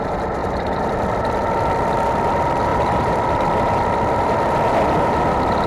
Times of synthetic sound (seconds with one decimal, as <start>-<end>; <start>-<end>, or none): 0.4-1.2; 2.7-5.0